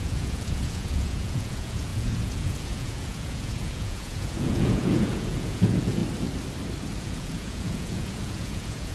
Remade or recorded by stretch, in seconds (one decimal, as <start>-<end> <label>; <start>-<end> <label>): 0.0-6.0 remade; 6.0-7.0 recorded; 7.0-8.9 remade